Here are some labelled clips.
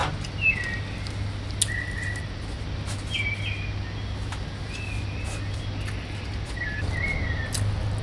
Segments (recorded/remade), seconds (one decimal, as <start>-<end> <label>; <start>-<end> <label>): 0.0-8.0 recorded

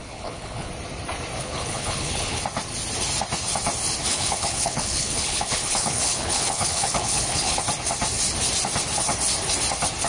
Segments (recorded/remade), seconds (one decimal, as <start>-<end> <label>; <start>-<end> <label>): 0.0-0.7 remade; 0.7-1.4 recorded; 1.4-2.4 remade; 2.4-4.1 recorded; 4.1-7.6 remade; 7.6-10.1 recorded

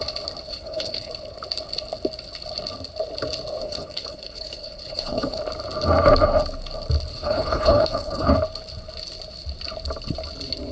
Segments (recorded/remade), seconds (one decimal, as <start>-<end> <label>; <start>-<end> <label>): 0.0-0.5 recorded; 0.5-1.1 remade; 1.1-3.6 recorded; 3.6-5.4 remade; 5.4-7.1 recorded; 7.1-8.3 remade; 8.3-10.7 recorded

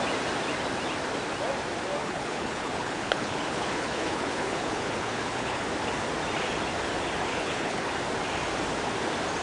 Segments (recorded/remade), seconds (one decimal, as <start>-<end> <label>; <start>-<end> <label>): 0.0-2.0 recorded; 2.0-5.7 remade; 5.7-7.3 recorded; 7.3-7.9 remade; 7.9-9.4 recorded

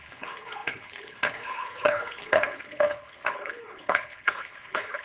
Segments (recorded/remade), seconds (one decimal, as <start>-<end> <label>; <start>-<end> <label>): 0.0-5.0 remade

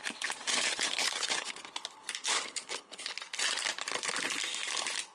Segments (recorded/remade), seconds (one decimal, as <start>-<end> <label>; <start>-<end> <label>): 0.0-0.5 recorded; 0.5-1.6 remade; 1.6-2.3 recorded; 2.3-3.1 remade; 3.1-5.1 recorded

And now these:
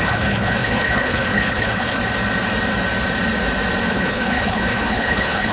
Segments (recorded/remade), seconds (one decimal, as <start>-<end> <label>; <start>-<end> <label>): 0.0-2.0 remade; 2.0-3.9 recorded; 3.9-5.5 remade